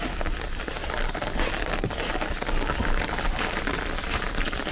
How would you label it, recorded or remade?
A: recorded